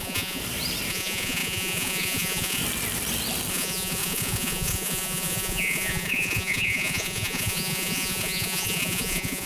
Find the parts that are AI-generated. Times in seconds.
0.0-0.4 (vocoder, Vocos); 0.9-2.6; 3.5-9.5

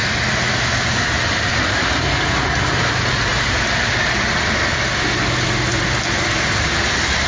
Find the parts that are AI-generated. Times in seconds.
none

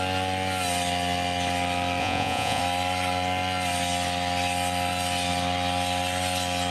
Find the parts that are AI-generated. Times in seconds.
2.0-2.6 (vocoder, Vocos)

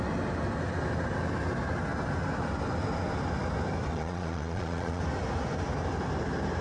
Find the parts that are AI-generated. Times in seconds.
3.9-5.0 (vocoder, Vocos)

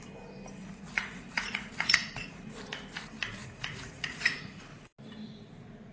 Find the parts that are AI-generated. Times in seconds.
0.6-2.5 (vocoder, Vocos); 3.4-4.6

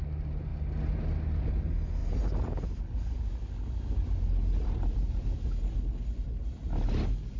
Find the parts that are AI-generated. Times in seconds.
none

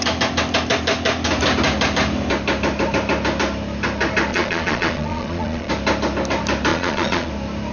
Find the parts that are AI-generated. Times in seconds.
4.3-5.7 (vocoder, Vocos); 6.7-7.3

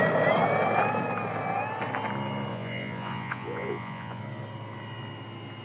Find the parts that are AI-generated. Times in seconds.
2.5-4.2 (vocoder, Vocos)